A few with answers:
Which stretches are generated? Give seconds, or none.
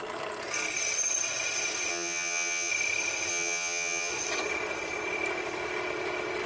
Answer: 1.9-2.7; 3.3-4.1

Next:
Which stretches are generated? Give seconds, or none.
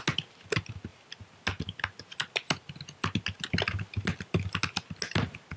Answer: none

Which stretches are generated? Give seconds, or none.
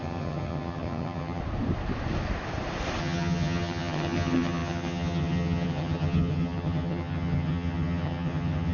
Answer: 0.0-1.4; 3.0-8.7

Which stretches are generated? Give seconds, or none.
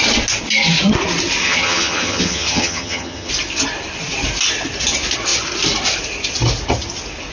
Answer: 1.4-3.3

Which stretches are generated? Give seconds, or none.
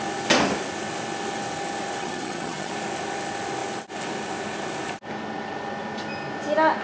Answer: 2.0-2.7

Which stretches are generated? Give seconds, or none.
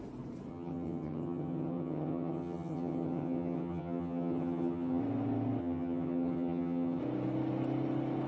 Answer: 0.5-5.0; 5.6-7.0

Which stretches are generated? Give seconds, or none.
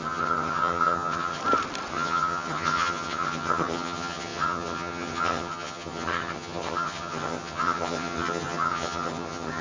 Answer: 0.0-1.4; 1.9-9.6